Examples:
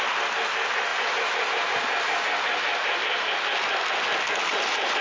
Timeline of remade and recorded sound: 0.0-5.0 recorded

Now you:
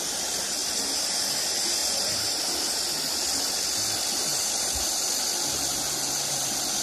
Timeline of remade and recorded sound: 0.0-0.6 recorded; 0.6-1.2 remade; 1.2-1.8 recorded; 1.8-2.4 remade; 2.4-6.8 recorded